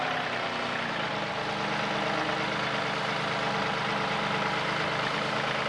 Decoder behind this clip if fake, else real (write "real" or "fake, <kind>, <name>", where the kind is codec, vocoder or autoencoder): real